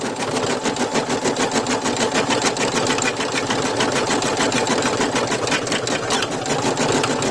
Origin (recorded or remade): recorded